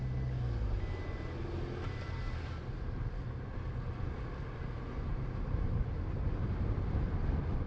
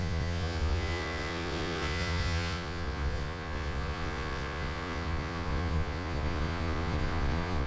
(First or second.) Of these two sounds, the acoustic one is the first